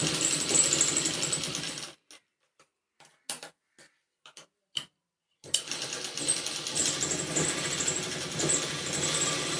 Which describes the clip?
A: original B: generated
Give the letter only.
A